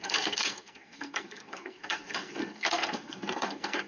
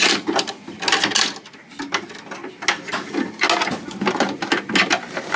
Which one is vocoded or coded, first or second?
first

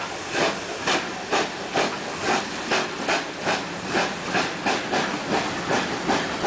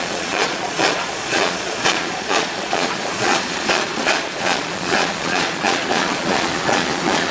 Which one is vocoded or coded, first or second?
second